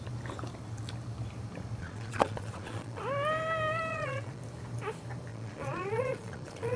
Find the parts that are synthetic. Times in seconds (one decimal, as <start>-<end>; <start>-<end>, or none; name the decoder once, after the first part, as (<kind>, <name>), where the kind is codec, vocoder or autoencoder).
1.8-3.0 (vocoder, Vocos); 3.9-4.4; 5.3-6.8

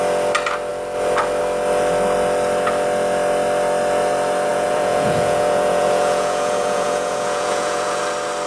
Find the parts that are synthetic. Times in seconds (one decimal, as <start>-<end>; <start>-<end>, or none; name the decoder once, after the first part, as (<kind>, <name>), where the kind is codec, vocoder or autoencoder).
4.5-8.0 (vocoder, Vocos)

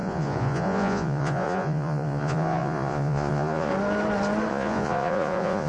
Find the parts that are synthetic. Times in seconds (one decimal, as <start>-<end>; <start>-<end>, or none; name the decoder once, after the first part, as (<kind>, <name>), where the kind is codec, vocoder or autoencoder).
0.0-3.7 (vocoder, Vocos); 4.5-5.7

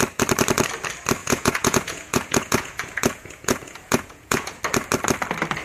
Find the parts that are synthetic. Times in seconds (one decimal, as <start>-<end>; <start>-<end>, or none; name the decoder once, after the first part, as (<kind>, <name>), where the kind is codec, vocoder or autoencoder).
1.2-4.6 (vocoder, Vocos)

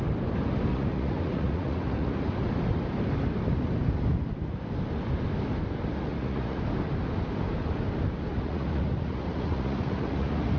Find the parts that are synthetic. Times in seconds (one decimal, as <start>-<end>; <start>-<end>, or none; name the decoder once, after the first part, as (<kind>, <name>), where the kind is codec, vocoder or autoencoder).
0.7-2.2 (vocoder, Vocos); 6.1-6.6; 8.3-10.6

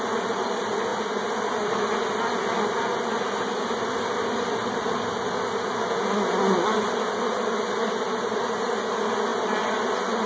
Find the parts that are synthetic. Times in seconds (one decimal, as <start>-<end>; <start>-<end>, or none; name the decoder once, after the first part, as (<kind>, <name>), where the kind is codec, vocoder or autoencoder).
none

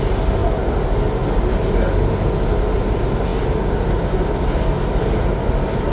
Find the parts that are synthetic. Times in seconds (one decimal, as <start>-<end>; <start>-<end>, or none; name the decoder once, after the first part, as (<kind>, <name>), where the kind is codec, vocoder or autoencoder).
none